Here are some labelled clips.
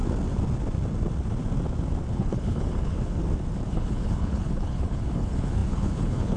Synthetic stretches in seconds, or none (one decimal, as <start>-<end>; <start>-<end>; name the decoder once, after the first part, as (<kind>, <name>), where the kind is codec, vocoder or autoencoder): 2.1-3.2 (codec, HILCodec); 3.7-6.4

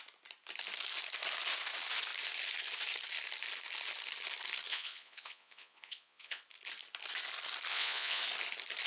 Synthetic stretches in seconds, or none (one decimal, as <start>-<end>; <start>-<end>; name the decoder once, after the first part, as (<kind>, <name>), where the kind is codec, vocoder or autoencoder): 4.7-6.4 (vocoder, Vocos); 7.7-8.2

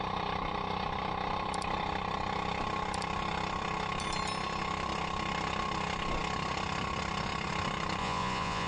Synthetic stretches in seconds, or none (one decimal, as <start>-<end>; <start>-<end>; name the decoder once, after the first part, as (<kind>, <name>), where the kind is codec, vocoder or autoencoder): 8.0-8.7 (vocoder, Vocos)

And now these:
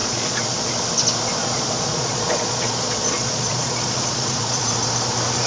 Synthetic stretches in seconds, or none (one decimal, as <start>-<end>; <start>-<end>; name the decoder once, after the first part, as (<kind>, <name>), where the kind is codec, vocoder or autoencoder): 0.0-0.7 (vocoder, Vocos); 1.4-4.7

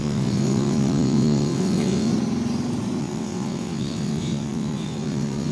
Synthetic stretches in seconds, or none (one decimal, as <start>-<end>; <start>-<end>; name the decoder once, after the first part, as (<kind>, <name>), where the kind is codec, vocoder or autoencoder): 0.0-2.1 (vocoder, WaveNeXt); 3.0-5.5